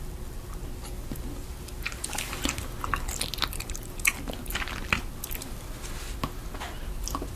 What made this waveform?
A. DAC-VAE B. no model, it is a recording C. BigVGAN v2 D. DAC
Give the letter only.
B